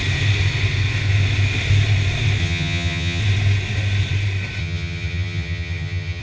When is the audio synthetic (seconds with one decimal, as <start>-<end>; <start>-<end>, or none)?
2.4-3.2; 4.6-6.2